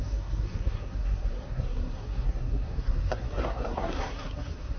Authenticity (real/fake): fake